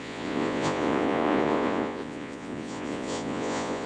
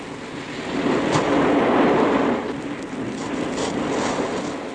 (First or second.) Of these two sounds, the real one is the second